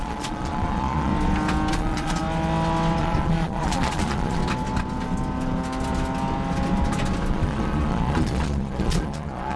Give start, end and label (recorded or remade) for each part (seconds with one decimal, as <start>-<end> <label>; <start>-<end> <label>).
0.0-1.1 remade; 1.1-1.7 recorded; 1.7-2.2 remade; 2.2-3.0 recorded; 3.0-4.4 remade; 4.4-7.3 recorded; 7.3-9.6 remade